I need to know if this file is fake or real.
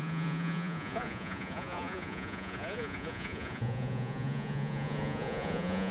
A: fake